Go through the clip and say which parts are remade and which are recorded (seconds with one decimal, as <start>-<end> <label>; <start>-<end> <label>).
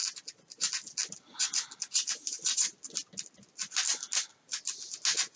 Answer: 0.0-5.4 recorded